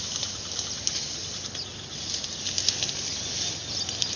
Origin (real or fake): real